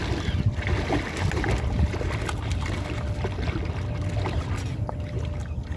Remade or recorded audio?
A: recorded